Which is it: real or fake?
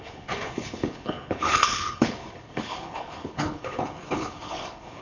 fake